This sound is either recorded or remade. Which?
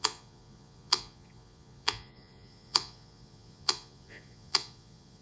remade